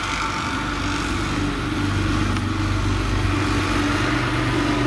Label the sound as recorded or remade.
recorded